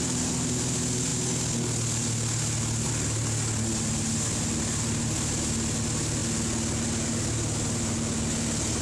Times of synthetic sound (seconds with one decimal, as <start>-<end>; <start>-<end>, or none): none